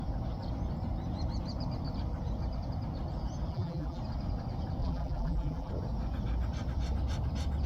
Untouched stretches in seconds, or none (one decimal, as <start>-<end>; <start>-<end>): 0.0-3.5; 4.0-4.8; 5.7-7.7